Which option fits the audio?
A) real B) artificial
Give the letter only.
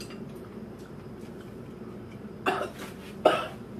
A